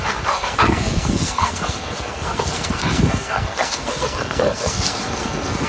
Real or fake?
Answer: fake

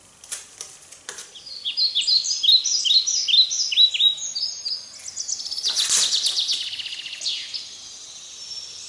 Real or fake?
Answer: real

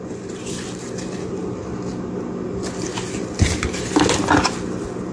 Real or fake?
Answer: real